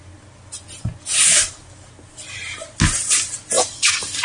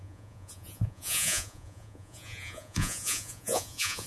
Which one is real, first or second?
first